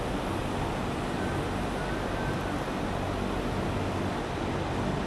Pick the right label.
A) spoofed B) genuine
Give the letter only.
B